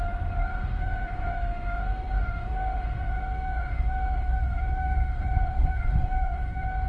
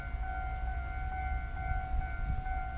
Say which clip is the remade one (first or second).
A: first